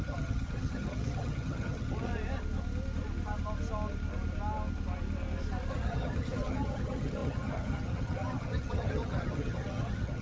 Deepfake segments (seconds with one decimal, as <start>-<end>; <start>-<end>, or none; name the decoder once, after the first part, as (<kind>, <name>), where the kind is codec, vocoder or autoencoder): 0.0-2.1 (vocoder, HiFi-GAN); 5.7-10.2

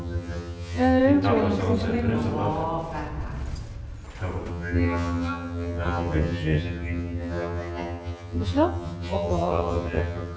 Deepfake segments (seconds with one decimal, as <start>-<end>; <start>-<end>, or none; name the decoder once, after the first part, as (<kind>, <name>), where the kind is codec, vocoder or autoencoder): 0.0-1.0 (vocoder, HiFi-GAN); 4.5-10.4

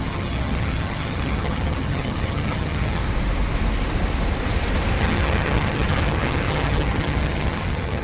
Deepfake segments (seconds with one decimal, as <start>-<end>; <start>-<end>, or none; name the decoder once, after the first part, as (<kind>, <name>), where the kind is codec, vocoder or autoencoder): 0.0-3.0 (vocoder, HiFi-GAN); 5.0-8.0

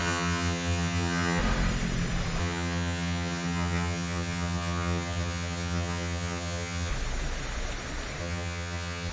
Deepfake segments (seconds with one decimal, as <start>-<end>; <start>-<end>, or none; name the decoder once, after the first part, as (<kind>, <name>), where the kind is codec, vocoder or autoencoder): 0.0-1.4 (vocoder, HiFi-GAN); 2.4-6.9; 8.2-9.1

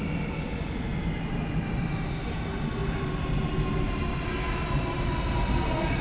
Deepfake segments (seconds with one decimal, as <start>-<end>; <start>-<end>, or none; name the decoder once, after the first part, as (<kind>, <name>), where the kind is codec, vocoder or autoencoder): none

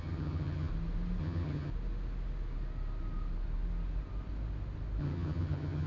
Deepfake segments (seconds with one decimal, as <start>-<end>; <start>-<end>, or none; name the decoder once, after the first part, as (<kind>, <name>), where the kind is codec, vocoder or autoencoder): 0.0-0.7 (vocoder, HiFi-GAN); 1.2-1.7; 5.0-5.9